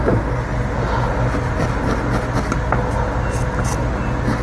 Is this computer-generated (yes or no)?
no